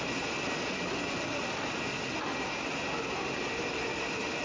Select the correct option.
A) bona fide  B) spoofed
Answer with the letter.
A